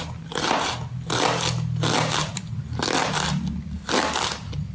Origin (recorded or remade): recorded